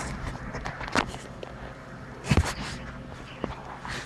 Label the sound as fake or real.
fake